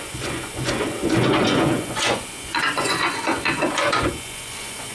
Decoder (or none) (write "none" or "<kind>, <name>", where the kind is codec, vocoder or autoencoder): vocoder, Vocos